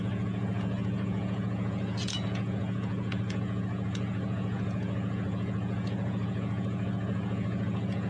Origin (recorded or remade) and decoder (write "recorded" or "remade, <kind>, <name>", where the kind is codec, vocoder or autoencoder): remade, vocoder, Vocos